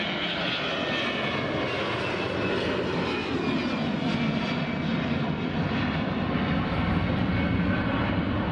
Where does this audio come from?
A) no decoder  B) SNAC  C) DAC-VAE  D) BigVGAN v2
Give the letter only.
A